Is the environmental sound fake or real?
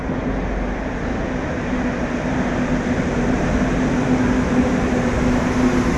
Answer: real